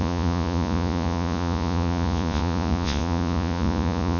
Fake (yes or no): yes